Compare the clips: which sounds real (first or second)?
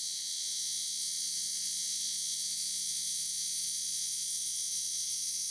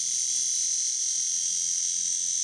second